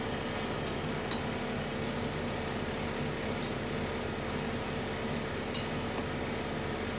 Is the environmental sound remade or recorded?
recorded